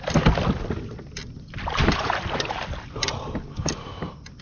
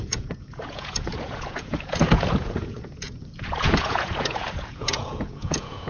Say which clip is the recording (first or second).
first